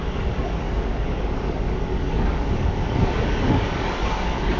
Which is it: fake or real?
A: fake